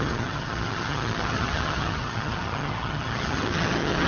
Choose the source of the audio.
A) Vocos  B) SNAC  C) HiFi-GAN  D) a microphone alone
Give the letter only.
C